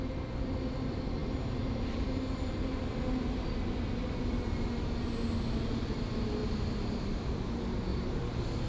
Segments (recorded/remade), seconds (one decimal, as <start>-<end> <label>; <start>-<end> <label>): 0.0-7.9 recorded; 7.9-8.7 remade